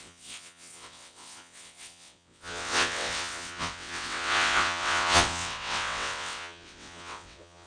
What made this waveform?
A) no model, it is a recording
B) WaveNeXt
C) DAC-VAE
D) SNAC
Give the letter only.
B